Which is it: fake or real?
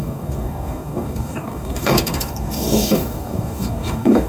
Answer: fake